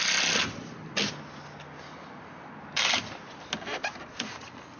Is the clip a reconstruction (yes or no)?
no